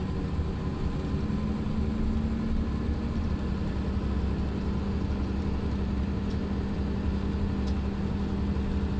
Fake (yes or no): no